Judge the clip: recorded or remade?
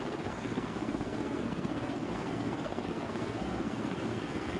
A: remade